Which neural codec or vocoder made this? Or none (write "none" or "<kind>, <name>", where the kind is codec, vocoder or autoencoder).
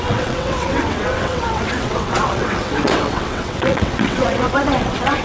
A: vocoder, WaveNeXt